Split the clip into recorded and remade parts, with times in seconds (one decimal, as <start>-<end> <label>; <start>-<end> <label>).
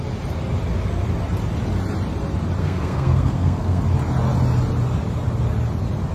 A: 0.0-2.6 recorded; 2.6-3.8 remade; 3.8-6.1 recorded